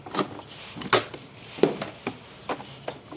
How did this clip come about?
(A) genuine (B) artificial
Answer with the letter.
A